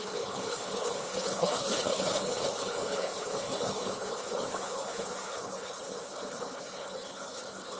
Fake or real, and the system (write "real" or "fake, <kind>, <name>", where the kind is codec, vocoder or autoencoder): fake, codec, HILCodec